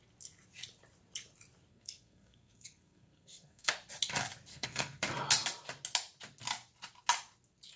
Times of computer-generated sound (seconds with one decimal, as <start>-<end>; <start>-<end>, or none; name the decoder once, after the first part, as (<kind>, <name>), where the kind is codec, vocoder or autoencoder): 1.7-3.7 (codec, SNAC); 4.5-5.0